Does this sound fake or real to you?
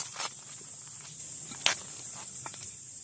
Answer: real